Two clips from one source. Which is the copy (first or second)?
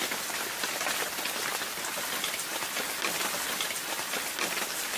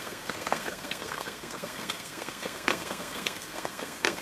second